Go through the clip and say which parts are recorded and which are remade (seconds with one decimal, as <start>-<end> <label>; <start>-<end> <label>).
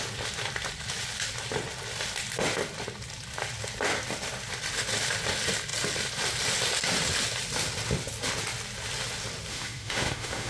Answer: 0.0-9.5 recorded; 9.5-10.5 remade